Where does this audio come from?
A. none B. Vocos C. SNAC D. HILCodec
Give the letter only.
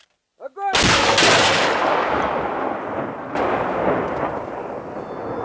A